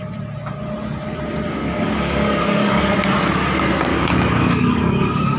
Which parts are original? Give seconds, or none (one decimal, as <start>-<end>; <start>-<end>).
0.0-1.6; 2.8-3.9